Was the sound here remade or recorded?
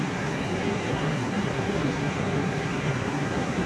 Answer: remade